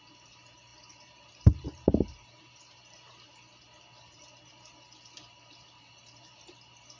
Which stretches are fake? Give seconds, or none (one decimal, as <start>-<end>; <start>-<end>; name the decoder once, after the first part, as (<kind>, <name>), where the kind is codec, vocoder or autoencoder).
0.0-7.0 (vocoder, BigVGAN v2)